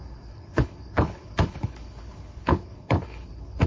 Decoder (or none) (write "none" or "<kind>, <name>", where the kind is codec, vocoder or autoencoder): codec, HILCodec